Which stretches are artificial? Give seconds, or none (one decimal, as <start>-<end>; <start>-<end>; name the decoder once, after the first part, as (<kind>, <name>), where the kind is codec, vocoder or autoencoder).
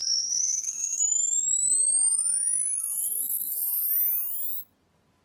0.0-1.0 (codec, SNAC); 2.8-3.9